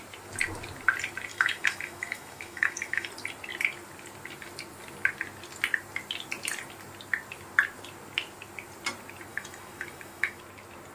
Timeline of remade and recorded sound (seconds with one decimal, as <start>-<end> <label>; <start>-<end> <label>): 0.0-1.3 recorded; 1.3-3.1 remade; 3.1-9.3 recorded; 9.3-10.4 remade; 10.4-10.9 recorded